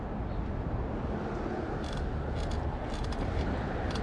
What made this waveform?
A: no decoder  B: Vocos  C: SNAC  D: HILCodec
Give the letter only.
A